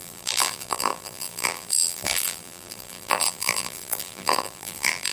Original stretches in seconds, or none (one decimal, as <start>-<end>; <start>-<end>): none